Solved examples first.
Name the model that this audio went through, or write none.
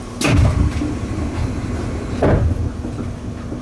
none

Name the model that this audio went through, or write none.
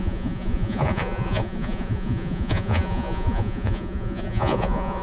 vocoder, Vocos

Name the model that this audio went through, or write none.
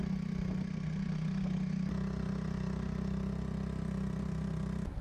none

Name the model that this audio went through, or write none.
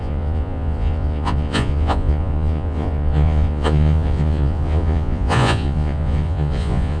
vocoder, Vocos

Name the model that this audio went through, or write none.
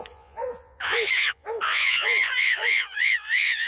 vocoder, Vocos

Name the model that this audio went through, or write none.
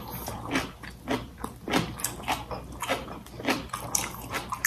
none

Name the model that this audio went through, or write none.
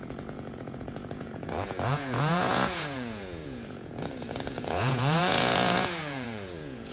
vocoder, Vocos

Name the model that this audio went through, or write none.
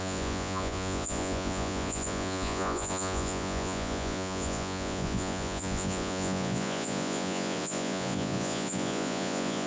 vocoder, Vocos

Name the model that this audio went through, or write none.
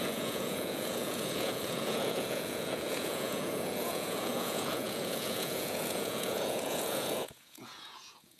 vocoder, Vocos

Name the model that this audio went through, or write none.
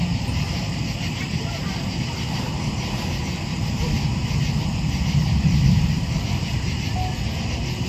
none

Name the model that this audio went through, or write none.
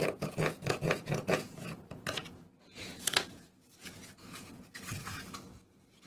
vocoder, Vocos